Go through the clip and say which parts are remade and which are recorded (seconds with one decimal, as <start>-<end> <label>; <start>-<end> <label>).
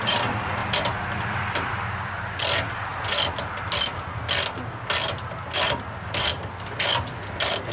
0.0-7.7 recorded